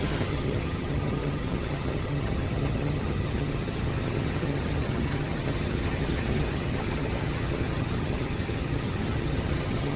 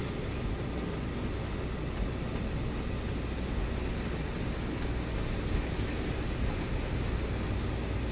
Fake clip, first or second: first